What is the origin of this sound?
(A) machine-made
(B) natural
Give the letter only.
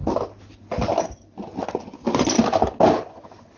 B